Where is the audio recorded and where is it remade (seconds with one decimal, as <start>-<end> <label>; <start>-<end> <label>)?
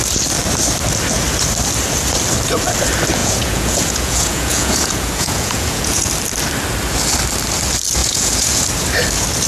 0.0-3.2 recorded; 3.2-6.1 remade; 6.1-8.0 recorded; 8.0-8.6 remade; 8.6-9.5 recorded